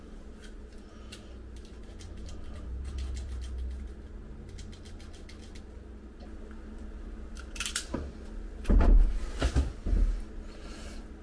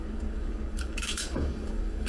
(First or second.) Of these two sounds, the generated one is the second